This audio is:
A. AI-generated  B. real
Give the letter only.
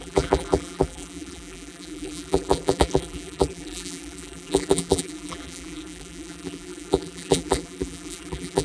A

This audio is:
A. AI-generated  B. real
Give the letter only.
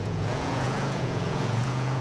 A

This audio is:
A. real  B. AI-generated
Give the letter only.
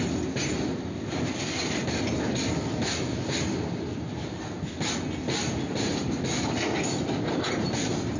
A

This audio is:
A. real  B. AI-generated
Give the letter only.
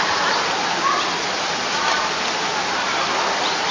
A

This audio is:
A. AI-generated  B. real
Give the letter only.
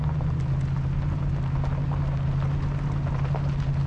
B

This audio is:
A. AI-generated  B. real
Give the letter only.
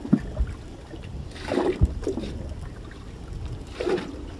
B